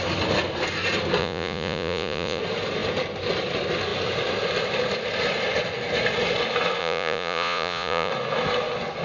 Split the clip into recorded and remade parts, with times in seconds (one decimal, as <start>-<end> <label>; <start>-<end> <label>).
0.0-1.2 recorded; 1.2-2.4 remade; 2.4-6.8 recorded; 6.8-8.1 remade; 8.1-9.0 recorded